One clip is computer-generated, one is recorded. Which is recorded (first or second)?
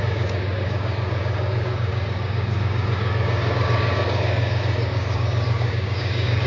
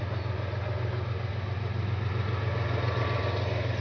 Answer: second